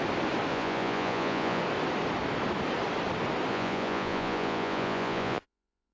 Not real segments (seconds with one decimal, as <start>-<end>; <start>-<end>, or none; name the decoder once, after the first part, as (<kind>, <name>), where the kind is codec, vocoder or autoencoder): 0.5-1.6 (vocoder, Vocos); 3.5-5.9